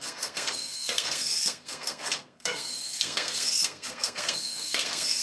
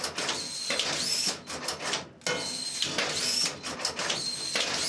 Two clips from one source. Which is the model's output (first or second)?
first